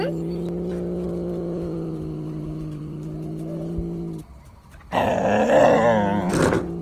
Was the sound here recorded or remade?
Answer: recorded